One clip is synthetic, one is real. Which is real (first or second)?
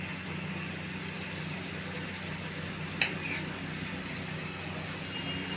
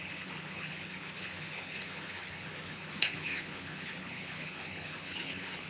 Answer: first